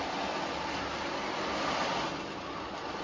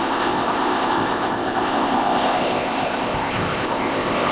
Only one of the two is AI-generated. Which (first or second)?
second